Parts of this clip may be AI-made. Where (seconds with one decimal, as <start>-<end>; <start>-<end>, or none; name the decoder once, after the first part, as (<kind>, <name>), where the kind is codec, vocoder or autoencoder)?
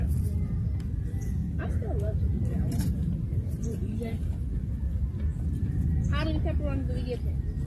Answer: 1.4-4.4 (vocoder, BigVGAN v2)